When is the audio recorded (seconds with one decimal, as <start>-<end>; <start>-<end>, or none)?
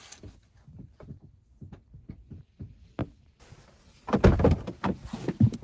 0.0-5.6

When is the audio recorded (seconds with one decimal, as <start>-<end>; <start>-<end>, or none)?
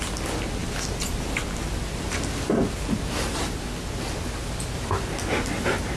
0.0-6.0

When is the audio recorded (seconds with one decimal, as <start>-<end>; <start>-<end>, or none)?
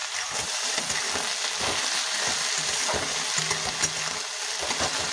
0.8-5.1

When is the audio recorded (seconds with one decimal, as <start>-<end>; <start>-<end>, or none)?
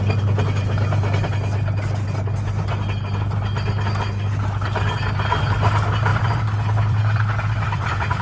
0.0-6.1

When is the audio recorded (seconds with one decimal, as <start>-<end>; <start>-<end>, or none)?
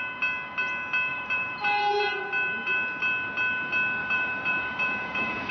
0.0-1.1; 2.2-4.0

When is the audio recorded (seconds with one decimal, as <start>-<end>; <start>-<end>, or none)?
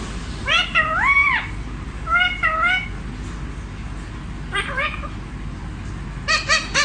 0.0-1.2; 5.3-6.8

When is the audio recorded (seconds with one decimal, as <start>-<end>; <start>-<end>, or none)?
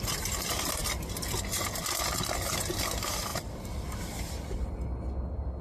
0.0-5.6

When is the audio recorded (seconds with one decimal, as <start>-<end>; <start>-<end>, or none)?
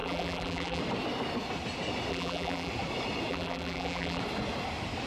0.8-2.1; 2.7-3.3; 4.2-5.1